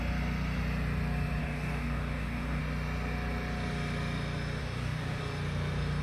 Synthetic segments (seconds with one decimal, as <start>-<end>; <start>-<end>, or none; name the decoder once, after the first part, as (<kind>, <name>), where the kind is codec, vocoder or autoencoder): 1.4-2.6 (codec, DAC); 4.6-5.2